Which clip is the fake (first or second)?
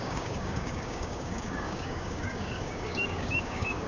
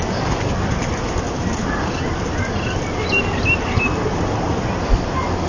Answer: first